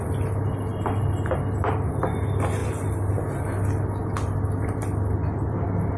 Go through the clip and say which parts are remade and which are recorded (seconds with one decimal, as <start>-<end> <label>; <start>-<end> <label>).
0.0-6.0 recorded